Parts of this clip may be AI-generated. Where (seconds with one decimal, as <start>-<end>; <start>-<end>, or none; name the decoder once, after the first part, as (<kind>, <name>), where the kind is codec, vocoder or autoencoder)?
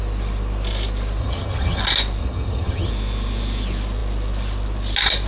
1.2-1.8 (vocoder, HiFi-GAN); 2.2-2.9